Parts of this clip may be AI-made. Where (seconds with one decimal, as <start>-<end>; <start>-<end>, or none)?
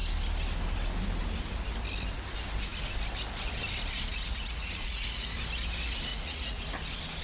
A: 4.1-5.3; 6.1-6.6